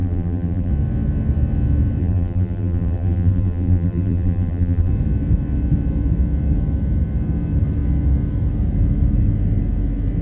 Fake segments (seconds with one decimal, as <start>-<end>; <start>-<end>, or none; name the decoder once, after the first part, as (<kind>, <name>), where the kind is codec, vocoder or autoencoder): 0.0-0.7 (vocoder, BigVGAN v2); 2.0-4.9